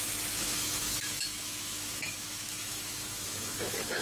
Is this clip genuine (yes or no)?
no